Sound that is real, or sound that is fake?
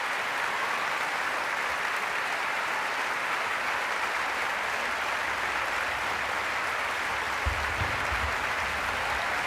real